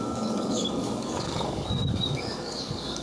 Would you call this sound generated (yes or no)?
yes